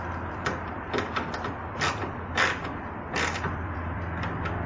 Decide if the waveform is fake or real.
fake